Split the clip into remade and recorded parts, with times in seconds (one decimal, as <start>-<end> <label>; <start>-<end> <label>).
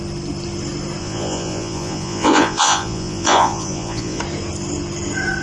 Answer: 0.0-1.0 recorded; 1.0-4.2 remade; 4.2-5.4 recorded